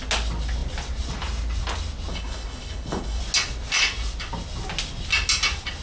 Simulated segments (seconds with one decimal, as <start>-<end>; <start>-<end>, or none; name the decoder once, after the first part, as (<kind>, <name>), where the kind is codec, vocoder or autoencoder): 2.1-3.2 (codec, HILCodec)

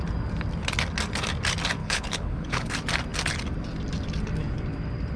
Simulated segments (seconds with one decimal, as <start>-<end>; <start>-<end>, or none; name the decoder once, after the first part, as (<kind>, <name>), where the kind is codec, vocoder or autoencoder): 1.8-2.7 (codec, HILCodec)

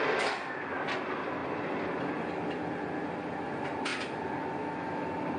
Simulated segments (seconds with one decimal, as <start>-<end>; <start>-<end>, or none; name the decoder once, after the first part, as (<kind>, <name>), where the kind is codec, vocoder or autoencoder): none

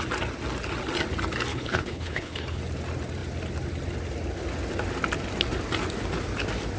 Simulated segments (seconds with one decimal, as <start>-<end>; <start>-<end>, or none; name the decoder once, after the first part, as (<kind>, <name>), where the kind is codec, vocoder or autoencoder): 1.5-2.6 (codec, HILCodec)

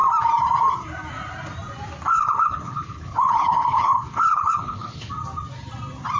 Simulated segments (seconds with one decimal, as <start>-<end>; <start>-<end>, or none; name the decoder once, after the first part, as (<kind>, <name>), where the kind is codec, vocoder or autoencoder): 2.1-5.1 (codec, HILCodec)

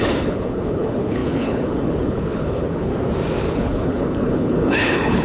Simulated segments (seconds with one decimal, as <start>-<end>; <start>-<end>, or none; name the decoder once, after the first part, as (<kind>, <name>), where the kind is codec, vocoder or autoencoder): 0.0-2.9 (codec, HILCodec); 3.5-5.2

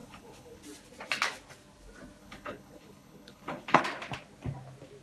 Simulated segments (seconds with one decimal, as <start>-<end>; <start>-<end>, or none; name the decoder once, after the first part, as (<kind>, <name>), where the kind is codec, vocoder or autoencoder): 0.0-0.6 (codec, HILCodec); 2.2-3.8

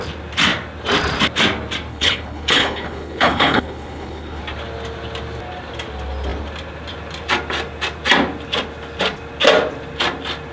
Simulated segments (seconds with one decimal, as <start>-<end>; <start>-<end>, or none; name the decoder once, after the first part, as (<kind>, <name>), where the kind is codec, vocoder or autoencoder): 1.9-4.4 (codec, HILCodec)